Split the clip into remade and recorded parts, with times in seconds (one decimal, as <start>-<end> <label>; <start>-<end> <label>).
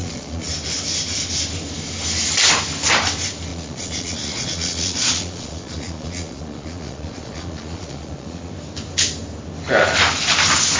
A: 0.0-0.5 remade; 0.5-3.5 recorded; 3.5-8.5 remade; 8.5-10.8 recorded